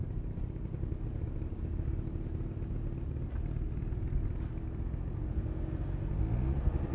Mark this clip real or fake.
real